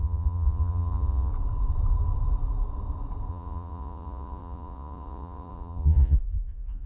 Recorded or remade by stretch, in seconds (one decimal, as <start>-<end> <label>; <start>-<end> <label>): 0.0-1.3 remade; 1.3-3.3 recorded; 3.3-6.9 remade